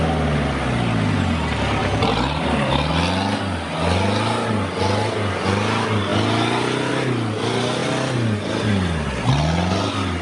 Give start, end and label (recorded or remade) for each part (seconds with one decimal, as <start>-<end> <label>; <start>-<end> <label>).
0.0-1.8 recorded; 1.8-2.9 remade; 2.9-10.2 recorded